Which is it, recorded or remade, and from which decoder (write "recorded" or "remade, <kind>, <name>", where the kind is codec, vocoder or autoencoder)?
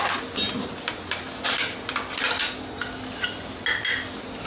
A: recorded